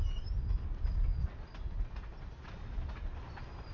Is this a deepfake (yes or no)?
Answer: no